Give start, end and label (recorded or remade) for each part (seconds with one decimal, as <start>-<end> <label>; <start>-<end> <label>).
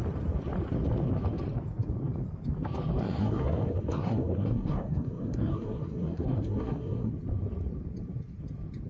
0.0-3.0 recorded; 3.0-7.1 remade; 7.1-8.9 recorded